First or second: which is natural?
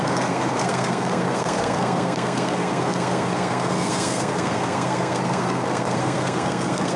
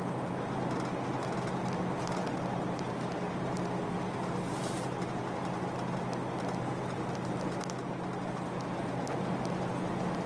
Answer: second